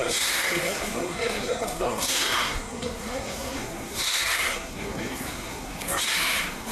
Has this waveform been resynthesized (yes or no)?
yes